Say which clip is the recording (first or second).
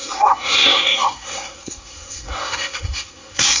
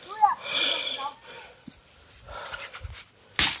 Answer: second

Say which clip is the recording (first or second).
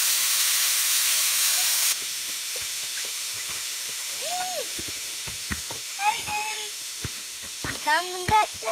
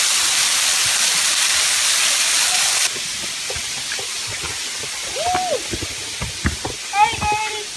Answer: second